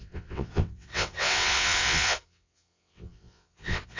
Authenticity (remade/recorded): remade